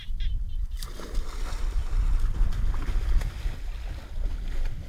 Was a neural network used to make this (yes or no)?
no